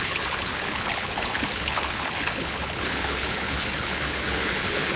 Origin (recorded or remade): remade